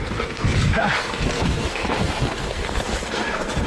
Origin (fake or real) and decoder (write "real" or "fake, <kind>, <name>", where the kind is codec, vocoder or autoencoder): fake, codec, SNAC